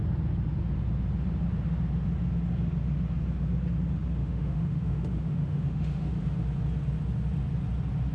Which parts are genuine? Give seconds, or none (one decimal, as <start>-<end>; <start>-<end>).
0.0-4.2; 6.1-8.1